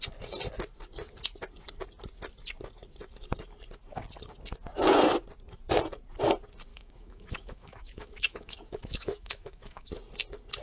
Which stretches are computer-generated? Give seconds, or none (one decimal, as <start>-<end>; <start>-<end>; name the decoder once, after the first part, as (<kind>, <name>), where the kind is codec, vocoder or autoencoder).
6.7-9.9 (autoencoder, DAC-VAE)